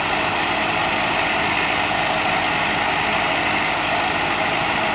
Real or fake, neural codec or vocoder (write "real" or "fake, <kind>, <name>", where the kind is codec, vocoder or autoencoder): real